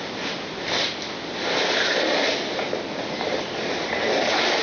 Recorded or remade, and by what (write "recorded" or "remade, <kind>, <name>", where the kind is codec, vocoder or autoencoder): recorded